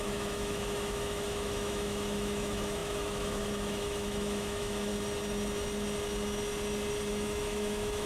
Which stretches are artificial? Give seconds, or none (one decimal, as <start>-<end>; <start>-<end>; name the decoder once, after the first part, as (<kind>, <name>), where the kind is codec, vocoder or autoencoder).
0.0-4.9 (autoencoder, DAC-VAE); 7.1-8.1